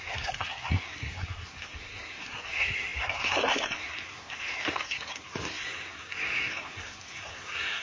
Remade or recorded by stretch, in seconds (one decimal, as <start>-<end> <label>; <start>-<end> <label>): 0.0-7.8 remade